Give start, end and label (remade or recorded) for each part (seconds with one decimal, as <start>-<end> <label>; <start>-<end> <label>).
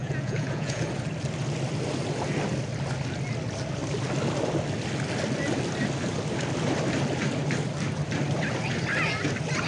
0.0-0.8 remade; 0.8-9.7 recorded